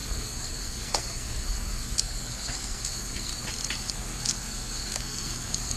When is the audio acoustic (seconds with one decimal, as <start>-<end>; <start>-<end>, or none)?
3.3-3.8